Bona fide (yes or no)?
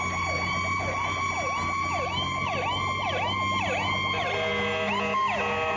yes